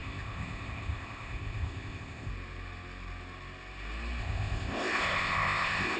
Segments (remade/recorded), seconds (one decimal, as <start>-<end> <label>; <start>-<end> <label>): 0.0-2.3 remade; 2.3-4.2 recorded; 4.2-6.0 remade